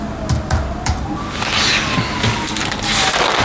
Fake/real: real